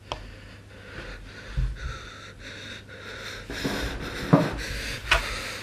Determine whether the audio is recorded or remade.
recorded